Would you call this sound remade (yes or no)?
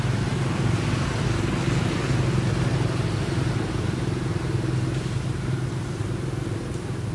no